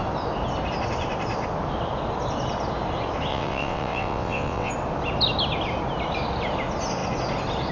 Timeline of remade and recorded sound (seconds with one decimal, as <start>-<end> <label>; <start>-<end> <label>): 0.0-3.3 recorded; 3.3-4.7 remade; 4.7-7.7 recorded

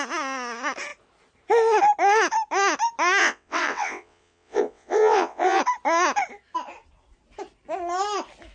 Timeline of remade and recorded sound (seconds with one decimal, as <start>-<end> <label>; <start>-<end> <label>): 0.0-3.2 recorded; 3.2-5.6 remade; 5.6-8.5 recorded